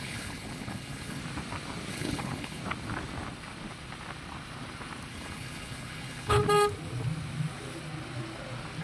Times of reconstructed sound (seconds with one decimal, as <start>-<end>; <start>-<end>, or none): 0.0-1.2; 1.9-2.6; 5.1-6.4